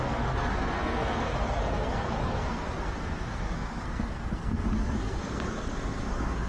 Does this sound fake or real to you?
fake